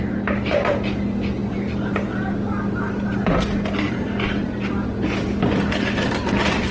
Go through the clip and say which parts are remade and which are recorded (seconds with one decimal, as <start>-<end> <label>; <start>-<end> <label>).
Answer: 0.0-6.7 recorded